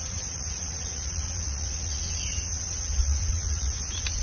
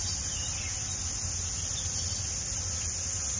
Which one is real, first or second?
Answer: second